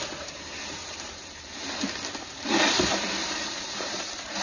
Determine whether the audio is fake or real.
fake